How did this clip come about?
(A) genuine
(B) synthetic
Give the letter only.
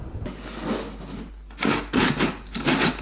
A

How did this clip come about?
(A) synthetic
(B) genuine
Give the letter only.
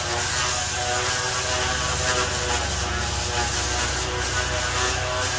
B